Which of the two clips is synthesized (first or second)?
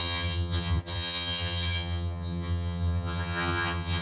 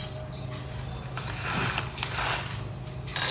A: first